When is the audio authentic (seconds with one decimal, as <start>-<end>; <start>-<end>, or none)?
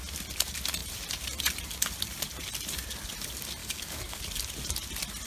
0.0-3.6; 4.2-5.3